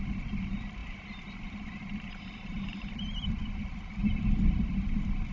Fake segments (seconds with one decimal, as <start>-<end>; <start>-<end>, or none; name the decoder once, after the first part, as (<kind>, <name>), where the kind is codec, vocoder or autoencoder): 0.8-4.0 (vocoder, BigVGAN v2)